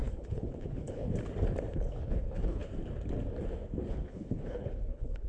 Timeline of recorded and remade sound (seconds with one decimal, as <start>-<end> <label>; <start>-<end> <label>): 0.0-1.1 remade; 1.1-1.7 recorded; 1.7-2.7 remade; 2.7-3.9 recorded; 3.9-5.3 remade